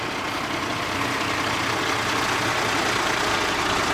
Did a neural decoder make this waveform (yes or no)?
no